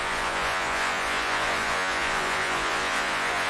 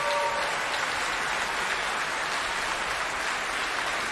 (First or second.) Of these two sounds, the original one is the second